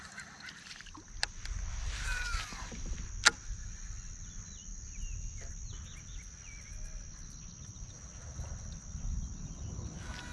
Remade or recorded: recorded